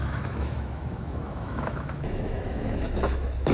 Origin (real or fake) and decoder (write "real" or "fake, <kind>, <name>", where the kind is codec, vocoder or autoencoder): fake, autoencoder, DAC-VAE